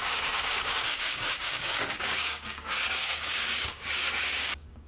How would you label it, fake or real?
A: fake